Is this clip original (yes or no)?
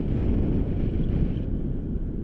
yes